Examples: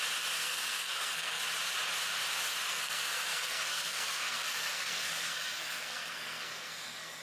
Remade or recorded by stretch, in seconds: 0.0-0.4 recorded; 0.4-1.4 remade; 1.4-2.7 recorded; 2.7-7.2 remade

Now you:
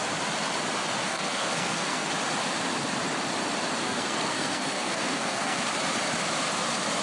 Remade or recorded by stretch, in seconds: 0.0-1.1 recorded; 1.1-2.1 remade; 2.1-3.8 recorded; 3.8-5.6 remade; 5.6-7.0 recorded

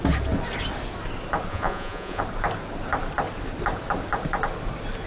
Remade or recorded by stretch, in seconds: 0.0-1.5 recorded; 1.5-2.2 remade; 2.2-5.1 recorded

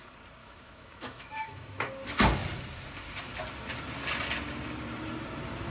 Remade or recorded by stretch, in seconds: 0.0-0.4 recorded; 0.4-1.9 remade; 1.9-5.7 recorded

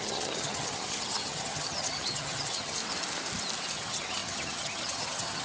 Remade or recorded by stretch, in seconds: 0.0-2.8 remade; 2.8-3.7 recorded; 3.7-5.4 remade

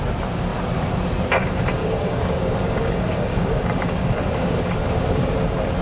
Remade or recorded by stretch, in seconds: 0.0-1.8 recorded; 1.8-5.3 remade; 5.3-5.8 recorded

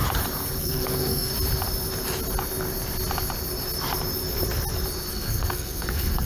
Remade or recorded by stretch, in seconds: 0.0-0.6 recorded; 0.6-1.3 remade; 1.3-5.1 recorded; 5.1-6.3 remade

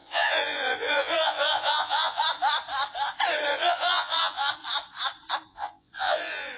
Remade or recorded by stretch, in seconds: 0.0-2.2 remade; 2.2-3.5 recorded; 3.5-4.5 remade; 4.5-5.5 recorded; 5.5-6.6 remade